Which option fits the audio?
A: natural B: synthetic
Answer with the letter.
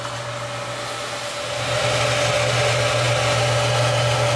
A